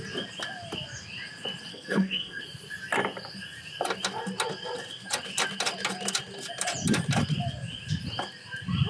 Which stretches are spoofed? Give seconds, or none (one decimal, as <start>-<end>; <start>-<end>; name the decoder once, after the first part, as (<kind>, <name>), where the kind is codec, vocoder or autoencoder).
1.7-2.4 (codec, SNAC)